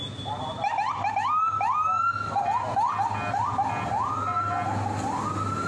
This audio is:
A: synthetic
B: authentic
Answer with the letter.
B